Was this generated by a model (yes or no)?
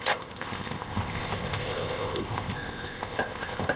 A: yes